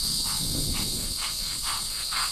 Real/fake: fake